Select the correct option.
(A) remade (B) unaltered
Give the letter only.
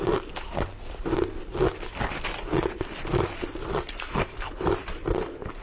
B